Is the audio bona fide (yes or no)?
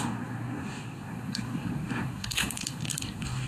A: no